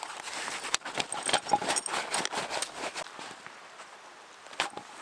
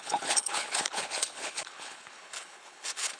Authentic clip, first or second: first